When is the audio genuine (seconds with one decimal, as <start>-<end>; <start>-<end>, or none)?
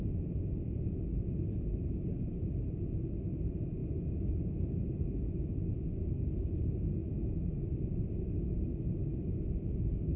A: 0.0-10.2